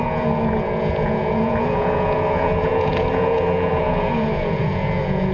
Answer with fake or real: fake